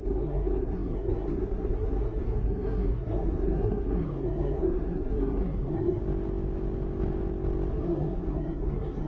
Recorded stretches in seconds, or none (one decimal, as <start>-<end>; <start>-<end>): 6.0-7.7